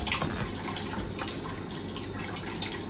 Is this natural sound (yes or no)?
yes